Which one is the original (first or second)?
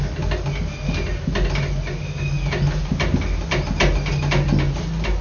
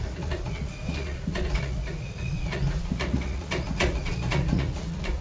first